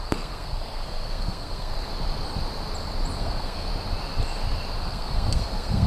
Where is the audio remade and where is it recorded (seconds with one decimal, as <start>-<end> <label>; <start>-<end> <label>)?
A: 0.0-1.9 remade; 1.9-3.2 recorded; 3.2-3.7 remade; 3.7-4.8 recorded; 4.8-5.9 remade